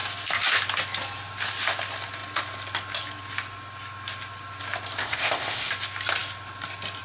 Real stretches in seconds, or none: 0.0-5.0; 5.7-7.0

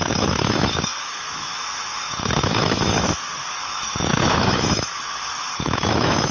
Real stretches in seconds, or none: none

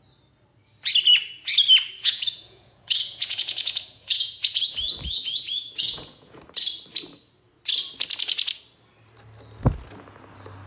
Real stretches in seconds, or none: 0.0-2.0; 6.4-10.7